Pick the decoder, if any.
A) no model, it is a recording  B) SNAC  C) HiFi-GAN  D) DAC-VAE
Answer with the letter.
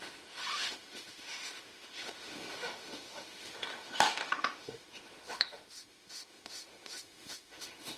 D